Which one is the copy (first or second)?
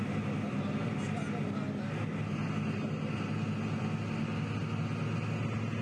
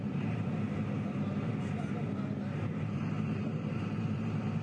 second